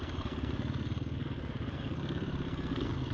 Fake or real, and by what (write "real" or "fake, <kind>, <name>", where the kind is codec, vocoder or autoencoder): fake, codec, SNAC